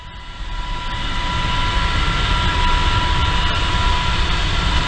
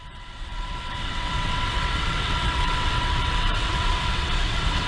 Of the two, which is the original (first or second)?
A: first